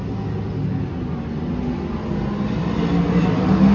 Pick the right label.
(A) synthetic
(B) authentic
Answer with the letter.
B